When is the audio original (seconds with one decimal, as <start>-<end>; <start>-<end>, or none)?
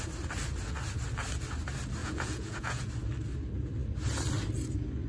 0.0-2.0; 2.9-5.1